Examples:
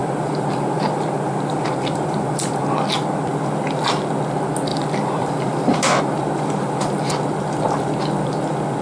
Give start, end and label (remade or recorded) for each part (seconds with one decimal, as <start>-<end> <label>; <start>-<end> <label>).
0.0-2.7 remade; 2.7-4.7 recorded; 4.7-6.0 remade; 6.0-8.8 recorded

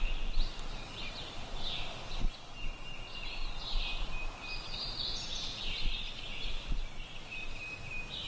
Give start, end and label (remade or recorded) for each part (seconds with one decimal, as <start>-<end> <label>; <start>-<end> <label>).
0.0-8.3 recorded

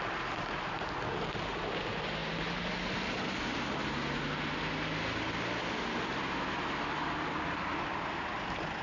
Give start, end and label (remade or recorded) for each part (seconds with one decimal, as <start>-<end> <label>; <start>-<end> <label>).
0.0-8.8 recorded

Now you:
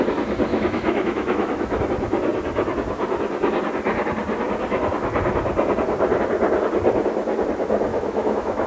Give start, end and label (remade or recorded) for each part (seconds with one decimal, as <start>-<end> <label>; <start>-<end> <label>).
0.0-0.5 recorded; 0.5-1.8 remade; 1.8-7.9 recorded; 7.9-8.7 remade

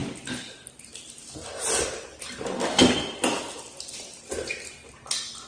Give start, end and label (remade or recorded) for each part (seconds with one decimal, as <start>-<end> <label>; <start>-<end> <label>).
0.0-3.3 remade; 3.3-4.1 recorded; 4.1-4.9 remade; 4.9-5.5 recorded

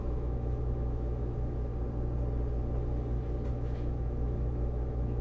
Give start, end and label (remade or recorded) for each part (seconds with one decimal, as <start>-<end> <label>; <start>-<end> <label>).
0.0-1.7 remade; 1.7-3.5 recorded; 3.5-5.2 remade